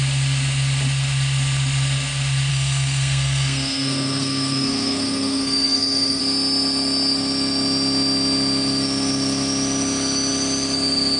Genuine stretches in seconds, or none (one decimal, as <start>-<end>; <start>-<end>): 0.0-2.5; 6.2-11.2